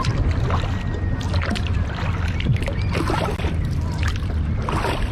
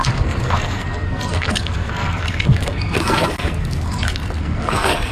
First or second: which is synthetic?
second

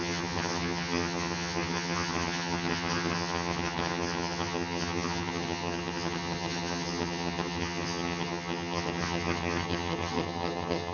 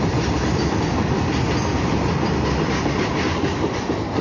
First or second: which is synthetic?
first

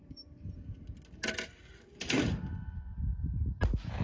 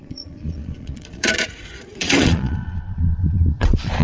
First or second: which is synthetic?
second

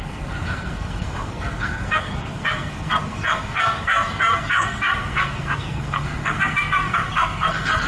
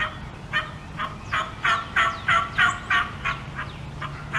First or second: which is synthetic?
first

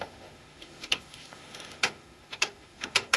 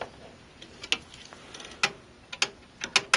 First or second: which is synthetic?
first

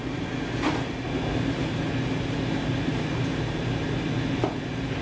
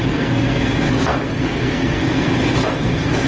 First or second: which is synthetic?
second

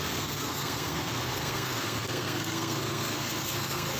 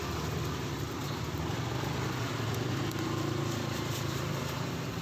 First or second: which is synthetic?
first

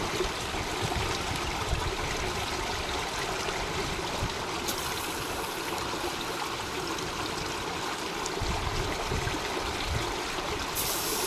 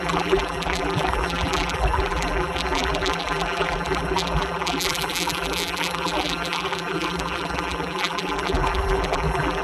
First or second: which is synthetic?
second